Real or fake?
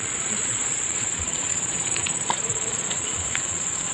fake